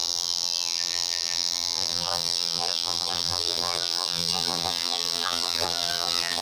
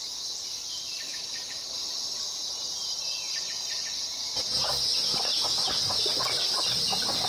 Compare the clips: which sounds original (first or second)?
second